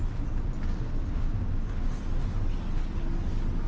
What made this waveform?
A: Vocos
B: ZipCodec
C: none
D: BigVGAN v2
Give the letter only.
C